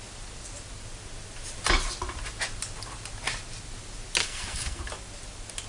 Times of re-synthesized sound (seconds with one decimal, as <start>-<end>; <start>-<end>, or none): 4.2-4.8

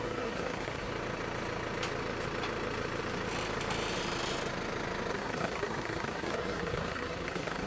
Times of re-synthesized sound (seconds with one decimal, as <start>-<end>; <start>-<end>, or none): 0.0-0.9; 5.1-7.7

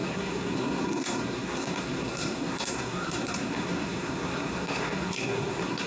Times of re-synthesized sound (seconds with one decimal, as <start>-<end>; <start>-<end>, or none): 0.0-5.9

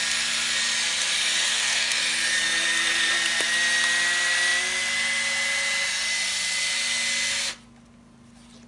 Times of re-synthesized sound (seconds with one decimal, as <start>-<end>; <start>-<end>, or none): 1.5-2.0

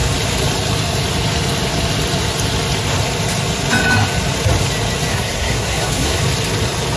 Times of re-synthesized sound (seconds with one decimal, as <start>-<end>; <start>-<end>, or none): 5.1-6.2

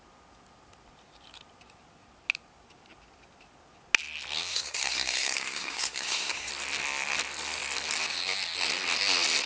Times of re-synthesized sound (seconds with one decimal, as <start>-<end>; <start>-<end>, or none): 4.5-6.5